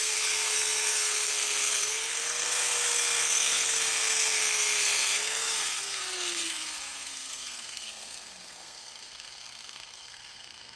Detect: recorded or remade remade